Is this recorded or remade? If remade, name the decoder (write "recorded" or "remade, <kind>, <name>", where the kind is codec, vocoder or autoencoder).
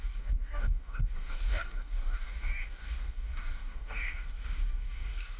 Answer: remade, codec, DAC